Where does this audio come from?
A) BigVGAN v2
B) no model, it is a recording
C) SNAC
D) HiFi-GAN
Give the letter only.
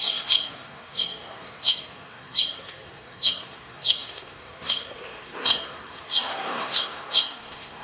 C